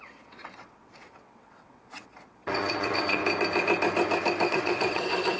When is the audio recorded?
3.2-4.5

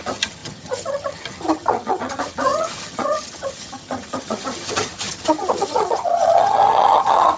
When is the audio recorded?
none

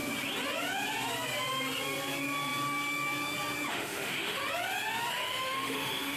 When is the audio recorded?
0.0-3.7; 4.4-5.1

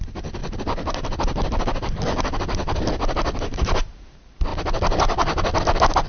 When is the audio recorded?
0.0-6.1

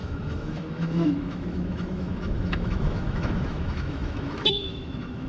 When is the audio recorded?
none

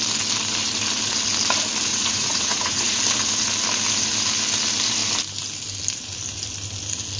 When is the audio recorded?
0.0-1.9; 3.0-7.2